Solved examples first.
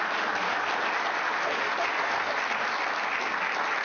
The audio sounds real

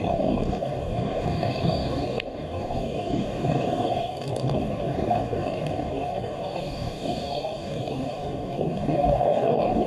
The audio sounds fake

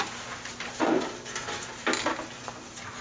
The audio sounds real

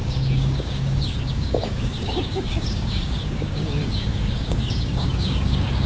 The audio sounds fake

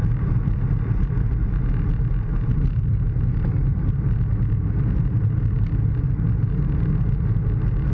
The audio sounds real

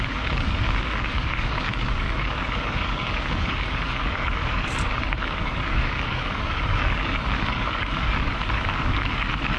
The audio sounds fake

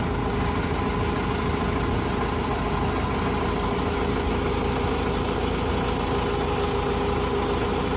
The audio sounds real